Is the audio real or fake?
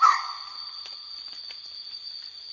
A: real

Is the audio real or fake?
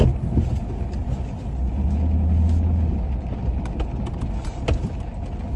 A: real